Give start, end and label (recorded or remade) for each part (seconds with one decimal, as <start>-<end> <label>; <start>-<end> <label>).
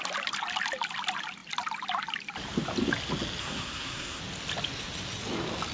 0.0-3.4 recorded; 3.4-4.2 remade; 4.2-5.7 recorded